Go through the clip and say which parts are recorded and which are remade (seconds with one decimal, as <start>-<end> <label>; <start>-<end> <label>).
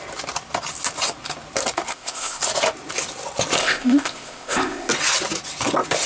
0.0-1.9 recorded; 1.9-2.4 remade; 2.4-3.6 recorded; 3.6-4.9 remade; 4.9-6.1 recorded